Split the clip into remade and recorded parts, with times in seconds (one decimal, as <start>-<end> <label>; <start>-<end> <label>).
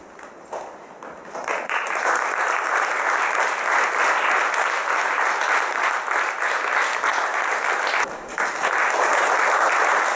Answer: 0.0-1.4 recorded; 1.4-1.9 remade; 1.9-10.2 recorded